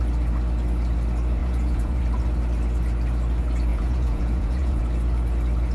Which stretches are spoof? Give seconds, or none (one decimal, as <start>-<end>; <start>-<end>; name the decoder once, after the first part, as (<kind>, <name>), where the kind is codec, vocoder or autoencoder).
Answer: 1.4-2.0 (vocoder, Vocos); 3.7-4.8